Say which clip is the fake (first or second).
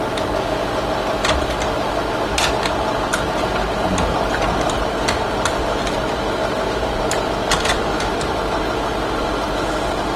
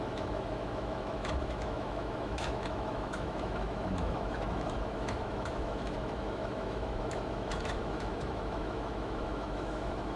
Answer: second